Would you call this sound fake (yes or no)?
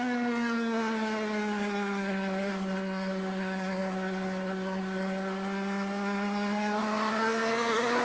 yes